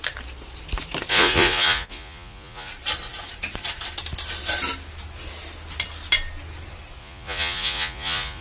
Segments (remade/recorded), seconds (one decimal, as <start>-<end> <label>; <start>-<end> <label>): 0.0-1.1 recorded; 1.1-2.7 remade; 2.7-7.0 recorded; 7.0-8.4 remade

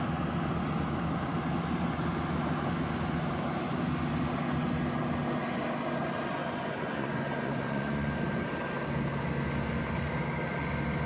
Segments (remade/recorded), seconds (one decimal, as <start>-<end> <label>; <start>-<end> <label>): 0.0-6.4 recorded; 6.4-8.1 remade; 8.1-11.1 recorded

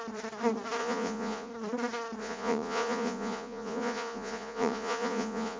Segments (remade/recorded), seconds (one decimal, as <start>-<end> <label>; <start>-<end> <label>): 0.0-0.8 recorded; 0.8-1.5 remade; 1.5-2.2 recorded; 2.2-5.6 remade

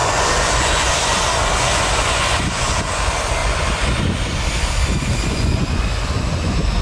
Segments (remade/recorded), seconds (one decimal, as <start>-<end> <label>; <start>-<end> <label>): 0.0-6.8 remade

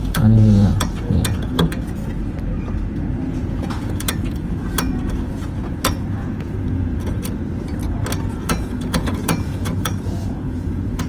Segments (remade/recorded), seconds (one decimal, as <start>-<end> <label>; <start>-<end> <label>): 0.0-2.0 remade; 2.0-3.3 recorded; 3.3-7.4 remade; 7.4-8.3 recorded; 8.3-11.1 remade

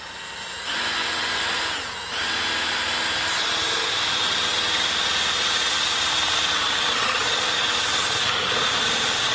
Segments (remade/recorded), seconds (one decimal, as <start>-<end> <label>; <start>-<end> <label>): 0.0-0.7 recorded; 0.7-1.6 remade; 1.6-9.3 recorded